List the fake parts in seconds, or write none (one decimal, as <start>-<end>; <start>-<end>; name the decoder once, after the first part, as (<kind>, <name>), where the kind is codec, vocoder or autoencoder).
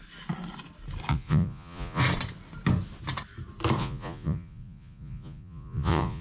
1.1-2.0 (vocoder, Vocos); 3.8-6.2